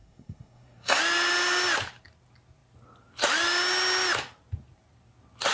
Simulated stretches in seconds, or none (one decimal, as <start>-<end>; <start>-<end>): 0.0-1.0